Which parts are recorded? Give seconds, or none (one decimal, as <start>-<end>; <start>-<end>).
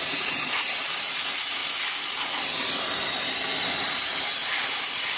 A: 1.6-3.7